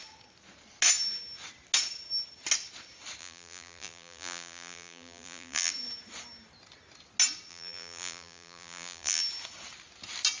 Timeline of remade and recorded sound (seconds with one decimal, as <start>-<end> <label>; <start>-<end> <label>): 0.0-3.2 recorded; 3.2-5.7 remade; 5.7-7.5 recorded; 7.5-9.2 remade; 9.2-10.4 recorded

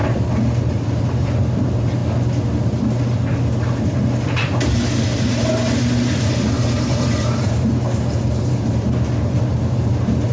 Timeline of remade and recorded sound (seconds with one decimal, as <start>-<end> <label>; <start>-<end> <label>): 0.0-2.0 remade; 2.0-3.9 recorded; 3.9-10.3 remade

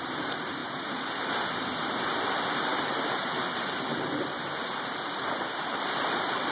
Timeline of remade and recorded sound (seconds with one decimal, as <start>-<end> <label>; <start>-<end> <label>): 0.0-0.6 remade; 0.6-1.8 recorded; 1.8-6.5 remade

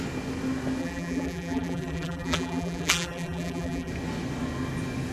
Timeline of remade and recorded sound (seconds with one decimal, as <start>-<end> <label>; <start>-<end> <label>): 0.0-0.8 recorded; 0.8-3.9 remade; 3.9-5.1 recorded

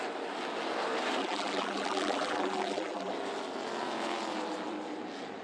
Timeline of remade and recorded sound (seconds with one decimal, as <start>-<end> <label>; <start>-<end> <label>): 0.0-1.2 recorded; 1.2-3.1 remade; 3.1-5.4 recorded

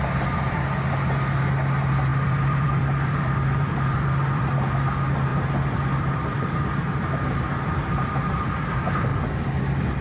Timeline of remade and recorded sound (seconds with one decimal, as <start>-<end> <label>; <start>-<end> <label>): 0.0-2.1 recorded; 2.1-4.5 remade; 4.5-5.3 recorded; 5.3-7.4 remade; 7.4-9.1 recorded; 9.1-9.6 remade; 9.6-10.0 recorded